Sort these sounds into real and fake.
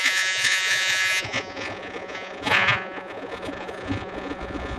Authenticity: fake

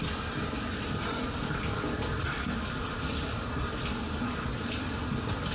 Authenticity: real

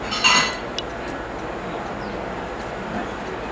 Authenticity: real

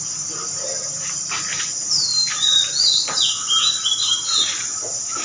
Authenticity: real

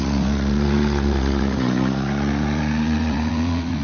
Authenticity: fake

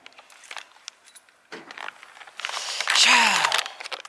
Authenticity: real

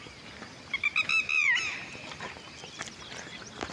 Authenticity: real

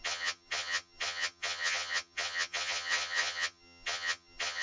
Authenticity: fake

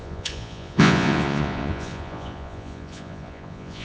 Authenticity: fake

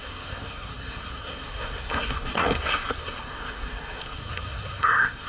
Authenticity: fake